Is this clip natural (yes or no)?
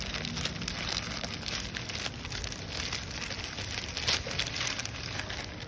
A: yes